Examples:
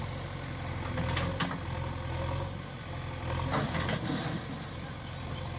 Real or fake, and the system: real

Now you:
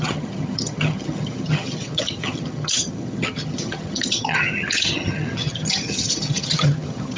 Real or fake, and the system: fake, vocoder, HiFi-GAN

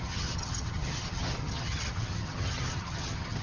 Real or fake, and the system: fake, vocoder, HiFi-GAN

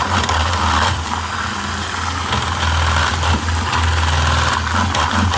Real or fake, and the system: real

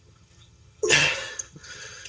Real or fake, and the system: fake, vocoder, HiFi-GAN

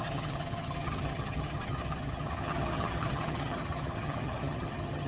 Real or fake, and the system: fake, vocoder, HiFi-GAN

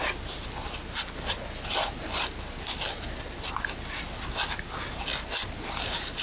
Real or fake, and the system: real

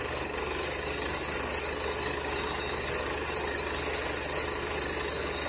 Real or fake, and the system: real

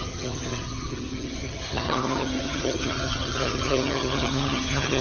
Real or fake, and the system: fake, vocoder, HiFi-GAN